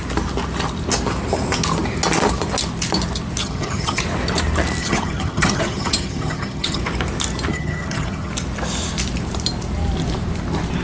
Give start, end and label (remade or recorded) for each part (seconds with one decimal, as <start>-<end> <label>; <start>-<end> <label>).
0.0-3.4 recorded; 3.4-4.0 remade; 4.0-4.8 recorded; 4.8-6.8 remade; 6.8-7.5 recorded; 7.5-8.3 remade; 8.3-10.8 recorded